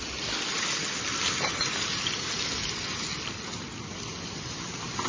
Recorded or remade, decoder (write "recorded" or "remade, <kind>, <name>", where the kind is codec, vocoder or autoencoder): recorded